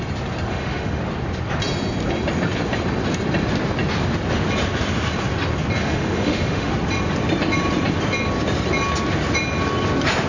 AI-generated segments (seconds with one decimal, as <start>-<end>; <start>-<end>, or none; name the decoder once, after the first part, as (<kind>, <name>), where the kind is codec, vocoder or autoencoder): 0.5-1.0 (autoencoder, DAC-VAE); 5.8-6.7